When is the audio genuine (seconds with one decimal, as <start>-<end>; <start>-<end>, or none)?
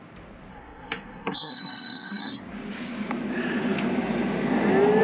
0.0-0.5; 2.4-5.0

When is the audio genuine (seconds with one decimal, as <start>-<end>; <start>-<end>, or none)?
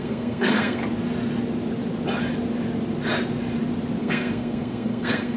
0.8-4.0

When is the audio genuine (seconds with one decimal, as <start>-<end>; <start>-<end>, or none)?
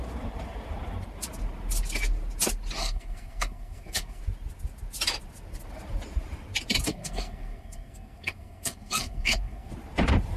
0.0-2.8; 4.2-6.9; 9.7-10.4